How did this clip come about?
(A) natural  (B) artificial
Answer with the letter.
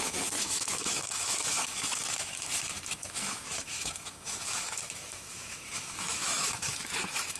B